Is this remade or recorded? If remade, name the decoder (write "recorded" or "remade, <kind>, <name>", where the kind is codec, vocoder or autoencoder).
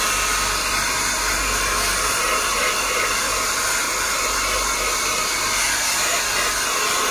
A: recorded